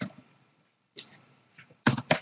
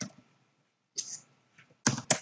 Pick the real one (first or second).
second